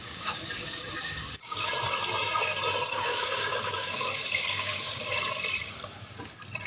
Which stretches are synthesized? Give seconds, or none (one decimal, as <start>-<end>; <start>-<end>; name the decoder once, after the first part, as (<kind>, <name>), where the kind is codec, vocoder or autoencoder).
0.0-1.7 (codec, DAC); 2.9-5.0